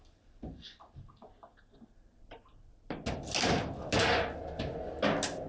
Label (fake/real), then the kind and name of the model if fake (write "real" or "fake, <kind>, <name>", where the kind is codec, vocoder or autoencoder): real